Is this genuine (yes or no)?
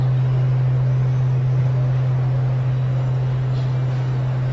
yes